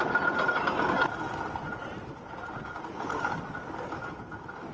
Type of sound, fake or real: fake